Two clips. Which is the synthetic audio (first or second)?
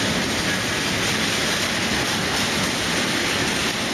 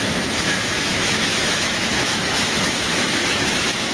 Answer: second